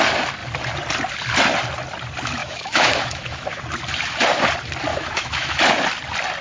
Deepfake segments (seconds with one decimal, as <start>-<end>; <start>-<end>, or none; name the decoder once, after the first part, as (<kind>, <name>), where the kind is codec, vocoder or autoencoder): 2.4-3.6 (autoencoder, DAC-VAE); 4.9-5.6